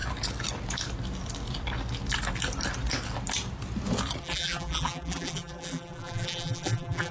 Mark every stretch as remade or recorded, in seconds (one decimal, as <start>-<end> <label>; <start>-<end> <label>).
0.0-4.2 recorded; 4.2-7.1 remade